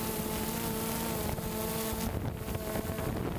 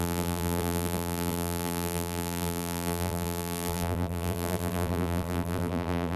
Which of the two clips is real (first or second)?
first